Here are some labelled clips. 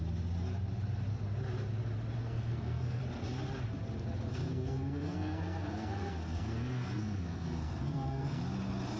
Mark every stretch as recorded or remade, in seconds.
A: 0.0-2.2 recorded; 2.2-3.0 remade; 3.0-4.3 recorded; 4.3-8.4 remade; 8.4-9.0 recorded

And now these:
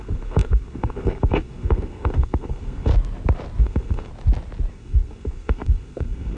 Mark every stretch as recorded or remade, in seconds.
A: 0.0-2.9 remade; 2.9-3.6 recorded; 3.6-4.1 remade; 4.1-4.7 recorded; 4.7-6.4 remade

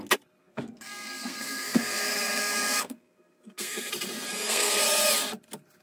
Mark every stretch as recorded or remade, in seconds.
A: 0.0-0.4 recorded; 0.4-3.9 remade; 3.9-4.3 recorded; 4.3-4.8 remade; 4.8-5.8 recorded

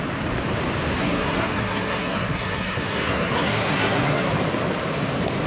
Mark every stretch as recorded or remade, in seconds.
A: 0.0-1.0 recorded; 1.0-4.3 remade; 4.3-5.5 recorded

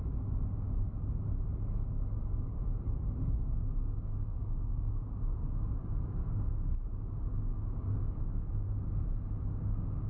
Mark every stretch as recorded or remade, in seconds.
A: 0.0-10.1 recorded

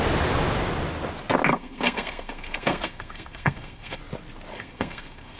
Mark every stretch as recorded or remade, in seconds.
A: 0.0-1.5 recorded; 1.5-4.0 remade; 4.0-4.5 recorded; 4.5-5.4 remade

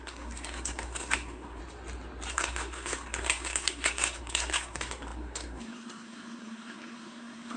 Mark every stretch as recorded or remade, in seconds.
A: 0.0-1.6 remade; 1.6-2.3 recorded; 2.3-7.6 remade

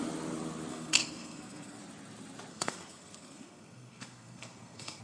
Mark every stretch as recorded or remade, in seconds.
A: 0.0-0.7 recorded; 0.7-1.8 remade; 1.8-2.5 recorded; 2.5-5.0 remade